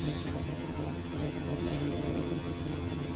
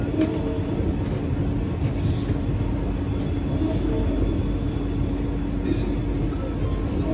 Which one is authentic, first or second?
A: second